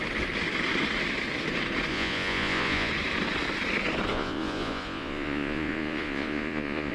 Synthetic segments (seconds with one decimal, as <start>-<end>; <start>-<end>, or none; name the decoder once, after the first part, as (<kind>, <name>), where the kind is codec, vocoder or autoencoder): 1.9-2.9 (vocoder, Vocos); 4.1-6.9

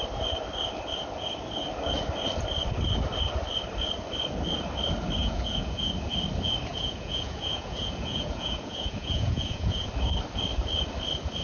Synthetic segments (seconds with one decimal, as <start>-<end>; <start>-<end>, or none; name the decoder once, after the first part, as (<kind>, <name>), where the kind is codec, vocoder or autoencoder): 5.2-5.9 (vocoder, Vocos); 6.7-9.9

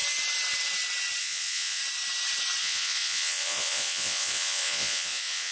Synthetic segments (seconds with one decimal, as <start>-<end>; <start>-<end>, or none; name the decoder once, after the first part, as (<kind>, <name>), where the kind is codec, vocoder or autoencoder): 1.2-1.8 (vocoder, Vocos); 2.6-5.5

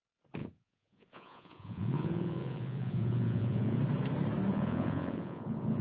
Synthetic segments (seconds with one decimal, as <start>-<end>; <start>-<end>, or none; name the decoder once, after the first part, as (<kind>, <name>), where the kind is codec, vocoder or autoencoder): 0.4-3.8 (vocoder, Vocos); 4.5-5.8

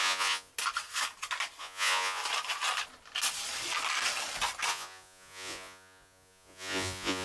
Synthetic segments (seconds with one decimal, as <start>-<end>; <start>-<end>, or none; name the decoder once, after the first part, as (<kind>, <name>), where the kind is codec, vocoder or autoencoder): 0.0-0.5 (vocoder, Vocos); 1.6-2.2; 4.7-7.2

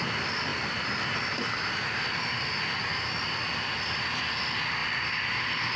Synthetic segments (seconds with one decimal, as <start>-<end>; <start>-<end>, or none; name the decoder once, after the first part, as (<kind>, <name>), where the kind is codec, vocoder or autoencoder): none

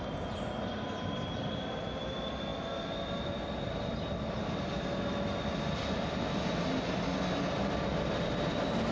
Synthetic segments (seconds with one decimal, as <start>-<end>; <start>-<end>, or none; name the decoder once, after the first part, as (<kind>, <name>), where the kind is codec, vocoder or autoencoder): none

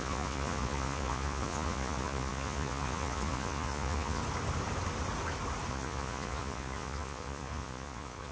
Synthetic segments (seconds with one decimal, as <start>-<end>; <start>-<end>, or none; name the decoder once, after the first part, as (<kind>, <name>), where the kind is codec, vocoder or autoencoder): 0.0-4.2 (vocoder, Vocos); 5.7-8.3